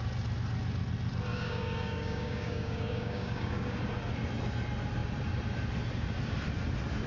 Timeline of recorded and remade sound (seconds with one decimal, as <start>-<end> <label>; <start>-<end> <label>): 0.0-1.3 recorded; 1.3-3.8 remade; 3.8-7.1 recorded